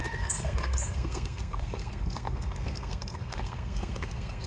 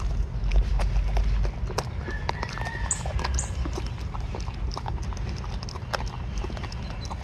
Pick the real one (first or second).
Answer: second